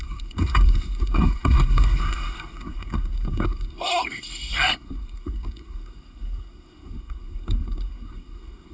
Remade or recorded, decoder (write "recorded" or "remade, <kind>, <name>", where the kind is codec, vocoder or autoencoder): remade, codec, SNAC